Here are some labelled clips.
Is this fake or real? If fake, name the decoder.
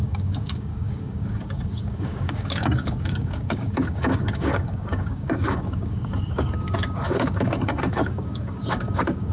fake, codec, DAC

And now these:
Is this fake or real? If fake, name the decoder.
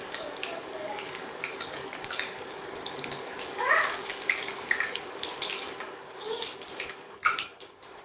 fake, codec, DAC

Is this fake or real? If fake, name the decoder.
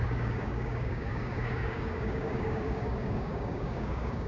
fake, codec, DAC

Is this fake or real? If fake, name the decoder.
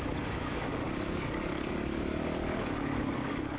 fake, codec, DAC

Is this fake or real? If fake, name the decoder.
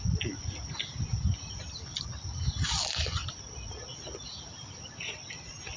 real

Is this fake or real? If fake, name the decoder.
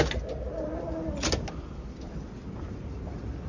real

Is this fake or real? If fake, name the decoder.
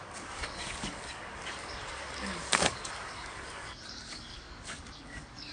fake, codec, DAC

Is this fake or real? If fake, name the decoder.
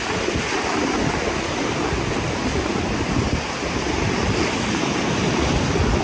real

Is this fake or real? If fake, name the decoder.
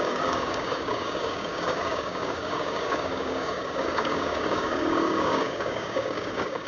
fake, codec, DAC